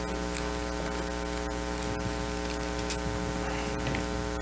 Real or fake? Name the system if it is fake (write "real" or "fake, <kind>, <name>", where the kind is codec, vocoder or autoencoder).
real